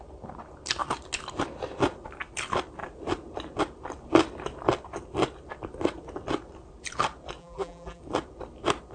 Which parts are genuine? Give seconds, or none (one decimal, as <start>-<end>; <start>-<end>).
0.0-7.4; 8.0-8.9